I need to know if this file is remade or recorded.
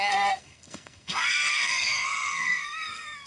remade